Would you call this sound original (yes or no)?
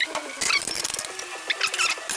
yes